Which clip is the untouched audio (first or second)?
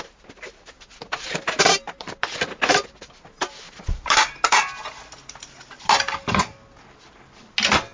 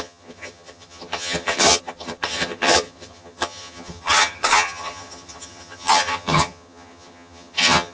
first